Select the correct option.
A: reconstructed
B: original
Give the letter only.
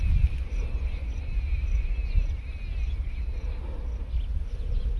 B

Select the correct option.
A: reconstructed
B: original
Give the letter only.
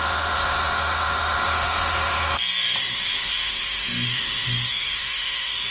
A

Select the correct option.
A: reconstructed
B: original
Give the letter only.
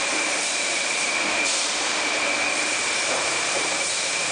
A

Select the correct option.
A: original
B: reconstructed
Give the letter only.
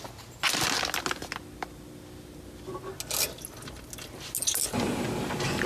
A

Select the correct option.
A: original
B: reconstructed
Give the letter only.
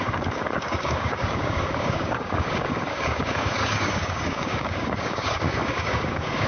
B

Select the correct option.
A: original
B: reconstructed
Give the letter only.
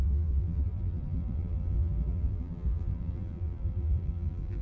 B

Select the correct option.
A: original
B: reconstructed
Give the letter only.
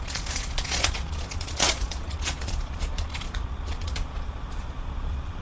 B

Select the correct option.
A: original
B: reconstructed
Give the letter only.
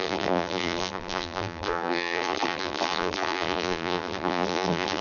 B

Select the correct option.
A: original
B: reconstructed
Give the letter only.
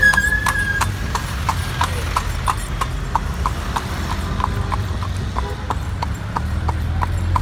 A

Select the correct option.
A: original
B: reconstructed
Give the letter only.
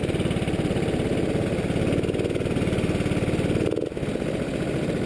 A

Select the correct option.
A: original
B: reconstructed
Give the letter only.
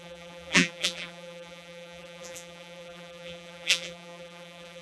B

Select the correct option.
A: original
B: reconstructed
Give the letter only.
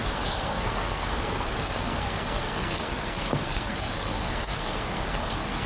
B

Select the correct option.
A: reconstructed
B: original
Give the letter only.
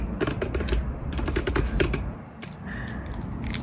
B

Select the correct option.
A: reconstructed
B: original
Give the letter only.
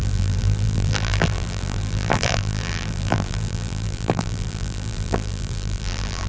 A